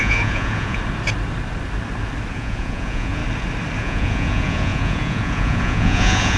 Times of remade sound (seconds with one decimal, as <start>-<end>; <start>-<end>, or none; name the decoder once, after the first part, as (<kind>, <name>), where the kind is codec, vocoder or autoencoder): 0.0-0.8 (vocoder, Vocos); 2.3-3.2; 3.8-6.4

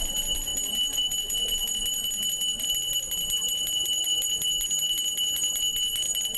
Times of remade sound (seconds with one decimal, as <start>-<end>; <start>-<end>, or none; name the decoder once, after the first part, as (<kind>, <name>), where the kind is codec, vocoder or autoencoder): 0.0-0.5 (vocoder, BigVGAN v2); 2.7-5.7

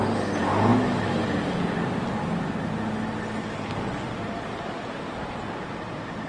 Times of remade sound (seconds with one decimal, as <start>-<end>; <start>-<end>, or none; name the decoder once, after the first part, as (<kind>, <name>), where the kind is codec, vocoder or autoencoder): none

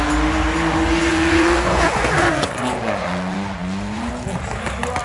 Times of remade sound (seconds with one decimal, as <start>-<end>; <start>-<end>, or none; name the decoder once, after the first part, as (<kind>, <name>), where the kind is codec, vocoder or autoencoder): 1.1-4.1 (vocoder, Vocos)